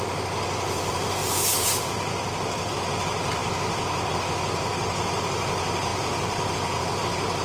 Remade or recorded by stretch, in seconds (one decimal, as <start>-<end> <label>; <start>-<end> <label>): 0.0-1.2 recorded; 1.2-2.7 remade; 2.7-5.9 recorded; 5.9-7.0 remade; 7.0-7.4 recorded